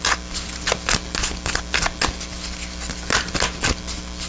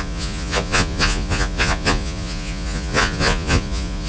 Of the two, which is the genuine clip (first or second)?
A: first